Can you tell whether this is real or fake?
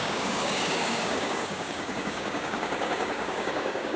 fake